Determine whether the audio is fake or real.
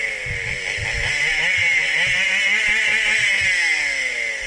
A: real